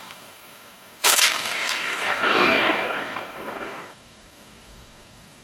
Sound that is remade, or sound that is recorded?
remade